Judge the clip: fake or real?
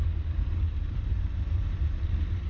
fake